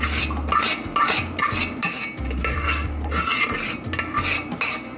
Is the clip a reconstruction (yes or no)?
no